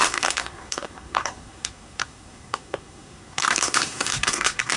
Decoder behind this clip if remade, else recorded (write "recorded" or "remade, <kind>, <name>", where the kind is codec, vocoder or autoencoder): remade, codec, SNAC